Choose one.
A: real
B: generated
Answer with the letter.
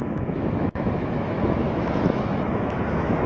B